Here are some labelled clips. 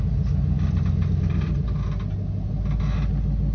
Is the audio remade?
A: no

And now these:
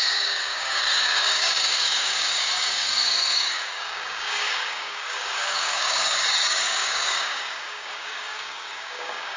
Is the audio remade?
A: yes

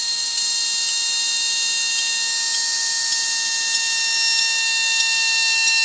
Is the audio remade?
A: no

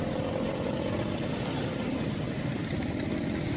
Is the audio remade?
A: no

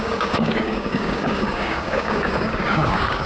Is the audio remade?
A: yes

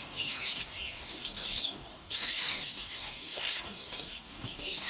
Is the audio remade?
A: yes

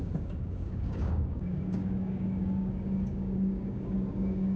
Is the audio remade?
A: yes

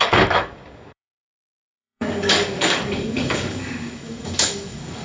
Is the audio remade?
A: yes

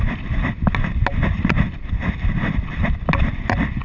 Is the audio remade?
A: no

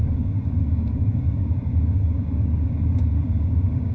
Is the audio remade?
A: yes